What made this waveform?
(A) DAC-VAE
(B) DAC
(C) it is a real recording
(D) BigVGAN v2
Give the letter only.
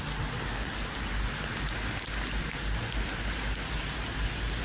C